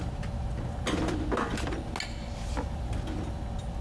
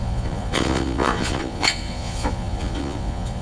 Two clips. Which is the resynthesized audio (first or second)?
second